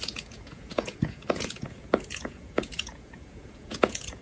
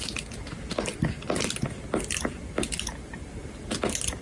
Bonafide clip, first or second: second